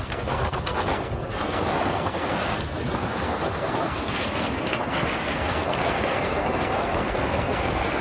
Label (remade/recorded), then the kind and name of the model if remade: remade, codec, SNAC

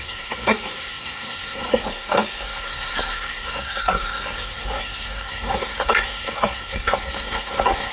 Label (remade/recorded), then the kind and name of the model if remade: remade, codec, SNAC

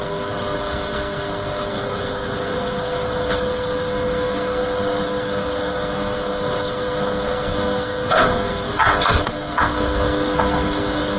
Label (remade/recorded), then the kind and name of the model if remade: remade, codec, SNAC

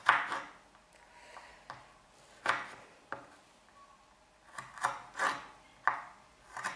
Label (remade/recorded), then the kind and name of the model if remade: recorded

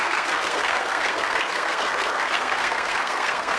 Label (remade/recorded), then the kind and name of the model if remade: remade, codec, SNAC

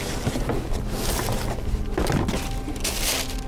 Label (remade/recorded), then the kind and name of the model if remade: recorded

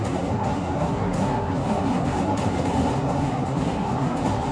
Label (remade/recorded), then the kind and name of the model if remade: remade, codec, SNAC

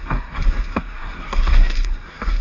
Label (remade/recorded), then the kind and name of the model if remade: remade, codec, SNAC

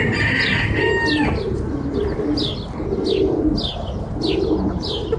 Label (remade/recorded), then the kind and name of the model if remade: recorded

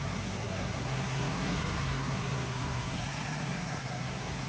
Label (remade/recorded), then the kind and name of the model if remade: remade, codec, SNAC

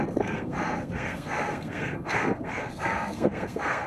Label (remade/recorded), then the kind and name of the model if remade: remade, codec, SNAC